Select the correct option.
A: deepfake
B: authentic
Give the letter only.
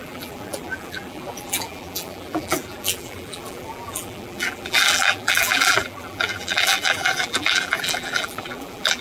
A